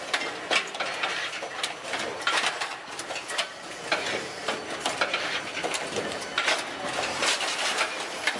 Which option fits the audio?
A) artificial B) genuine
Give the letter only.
A